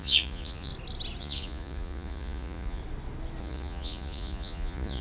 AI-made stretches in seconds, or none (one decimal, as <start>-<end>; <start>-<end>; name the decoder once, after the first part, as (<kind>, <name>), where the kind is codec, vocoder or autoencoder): 0.0-0.7 (vocoder, Vocos); 1.2-2.8; 3.4-5.0